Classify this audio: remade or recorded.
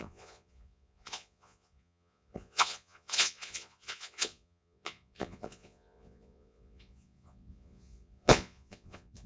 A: remade